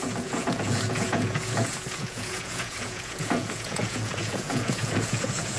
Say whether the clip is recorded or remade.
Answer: remade